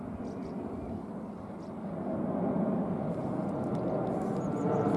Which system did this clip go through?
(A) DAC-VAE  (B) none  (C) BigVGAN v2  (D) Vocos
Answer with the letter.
B